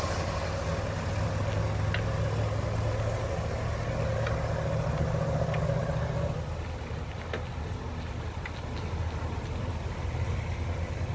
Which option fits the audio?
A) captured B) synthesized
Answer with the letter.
A